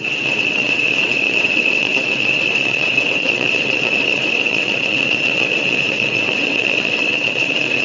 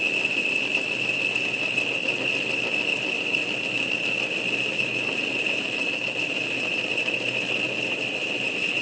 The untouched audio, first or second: second